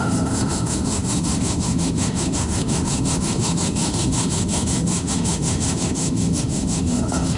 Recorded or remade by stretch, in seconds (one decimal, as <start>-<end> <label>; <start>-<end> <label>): 0.0-7.4 remade